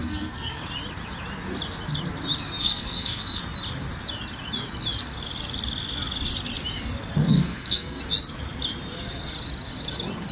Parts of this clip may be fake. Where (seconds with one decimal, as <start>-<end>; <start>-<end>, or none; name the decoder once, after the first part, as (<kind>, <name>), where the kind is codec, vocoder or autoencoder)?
0.0-0.6 (codec, SNAC); 2.6-3.4; 7.2-8.0